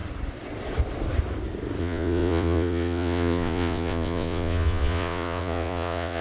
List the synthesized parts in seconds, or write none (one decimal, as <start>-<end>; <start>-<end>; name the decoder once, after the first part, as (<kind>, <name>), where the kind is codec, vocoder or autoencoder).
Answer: 1.8-6.2 (vocoder, Vocos)